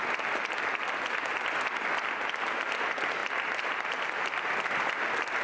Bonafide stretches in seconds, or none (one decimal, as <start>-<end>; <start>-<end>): 0.0-5.4